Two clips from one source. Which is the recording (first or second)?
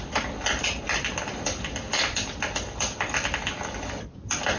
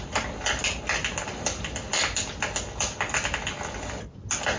second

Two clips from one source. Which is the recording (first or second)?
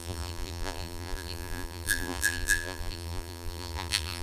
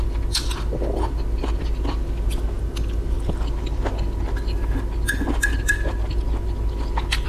second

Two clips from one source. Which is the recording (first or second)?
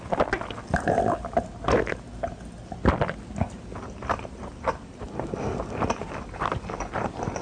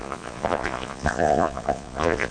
first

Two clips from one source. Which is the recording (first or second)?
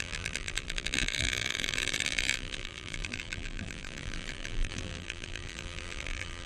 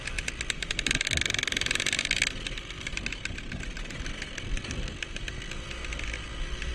second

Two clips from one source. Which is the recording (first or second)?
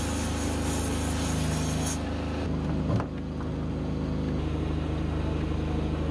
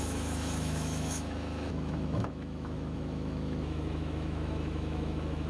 first